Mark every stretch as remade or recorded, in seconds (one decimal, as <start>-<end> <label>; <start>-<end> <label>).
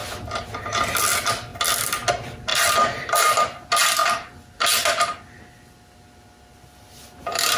0.0-2.5 recorded; 2.5-3.3 remade; 3.3-7.6 recorded